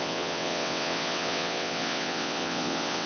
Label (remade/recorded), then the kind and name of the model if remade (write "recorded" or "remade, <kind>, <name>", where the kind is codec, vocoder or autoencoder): remade, vocoder, WaveNeXt